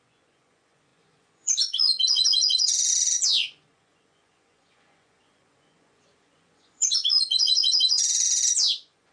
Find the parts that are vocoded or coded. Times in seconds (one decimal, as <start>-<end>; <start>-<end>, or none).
0.0-9.1